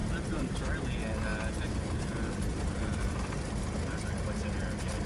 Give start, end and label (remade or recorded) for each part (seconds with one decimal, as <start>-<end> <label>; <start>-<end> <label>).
0.0-0.6 remade; 0.6-1.3 recorded; 1.3-3.6 remade; 3.6-5.1 recorded